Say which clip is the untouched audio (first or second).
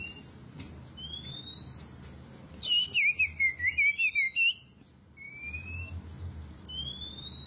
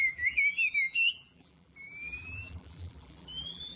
first